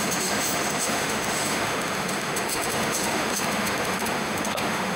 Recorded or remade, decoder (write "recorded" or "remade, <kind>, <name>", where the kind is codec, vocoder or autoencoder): remade, autoencoder, DAC-VAE